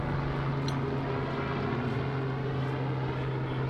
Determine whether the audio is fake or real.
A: real